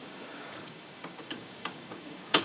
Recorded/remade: remade